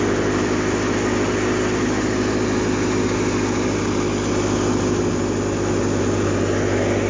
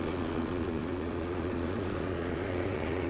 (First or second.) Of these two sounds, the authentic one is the first